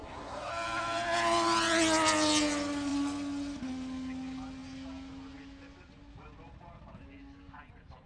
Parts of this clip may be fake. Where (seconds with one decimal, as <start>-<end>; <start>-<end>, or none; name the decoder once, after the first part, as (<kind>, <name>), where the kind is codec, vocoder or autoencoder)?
0.0-0.5 (codec, SNAC)